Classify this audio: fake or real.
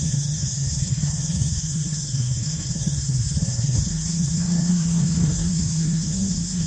fake